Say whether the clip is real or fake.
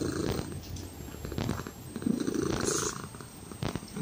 real